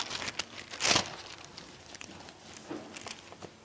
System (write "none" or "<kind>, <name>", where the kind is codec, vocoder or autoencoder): none